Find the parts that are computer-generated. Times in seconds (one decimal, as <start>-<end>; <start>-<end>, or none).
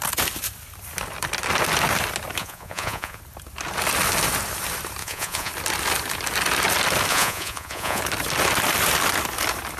2.4-3.2; 5.0-5.5; 7.1-8.0